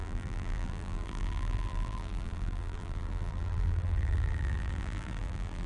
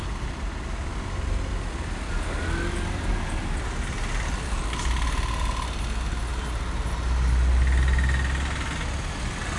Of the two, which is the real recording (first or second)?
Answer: second